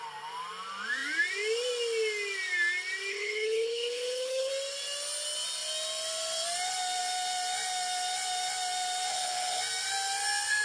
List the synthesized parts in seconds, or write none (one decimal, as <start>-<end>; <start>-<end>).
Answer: 3.1-4.5; 9.1-9.6